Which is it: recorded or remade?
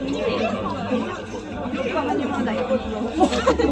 recorded